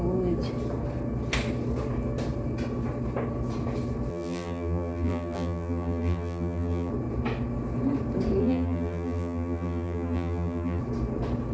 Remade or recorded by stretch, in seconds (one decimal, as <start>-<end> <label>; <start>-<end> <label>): 0.0-4.1 recorded; 4.1-6.9 remade; 6.9-8.4 recorded; 8.4-10.8 remade; 10.8-11.5 recorded